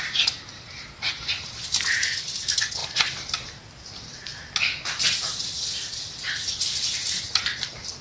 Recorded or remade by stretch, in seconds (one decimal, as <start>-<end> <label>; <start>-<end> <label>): 0.0-8.0 recorded